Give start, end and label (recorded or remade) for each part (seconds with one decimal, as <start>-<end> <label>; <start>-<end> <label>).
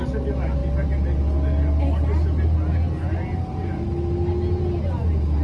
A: 0.0-5.4 recorded